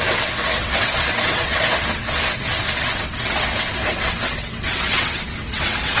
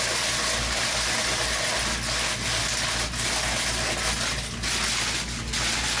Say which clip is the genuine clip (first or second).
second